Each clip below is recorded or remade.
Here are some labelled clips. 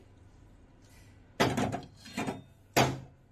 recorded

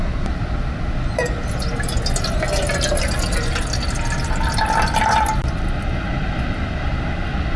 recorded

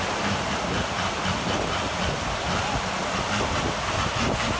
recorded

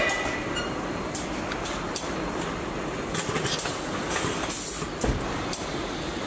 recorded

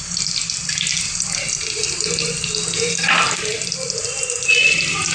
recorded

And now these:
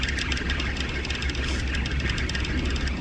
recorded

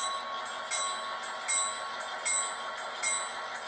recorded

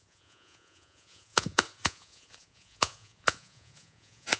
remade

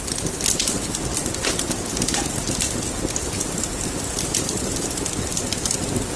recorded